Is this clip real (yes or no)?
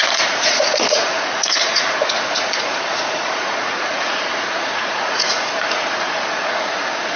no